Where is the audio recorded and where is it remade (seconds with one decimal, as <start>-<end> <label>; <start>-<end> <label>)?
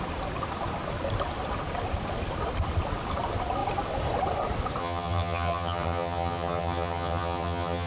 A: 0.0-4.8 recorded; 4.8-7.9 remade